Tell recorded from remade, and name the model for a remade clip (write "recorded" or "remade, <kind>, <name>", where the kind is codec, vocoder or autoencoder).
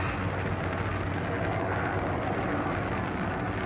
recorded